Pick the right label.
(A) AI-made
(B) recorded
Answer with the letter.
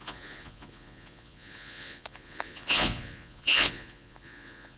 A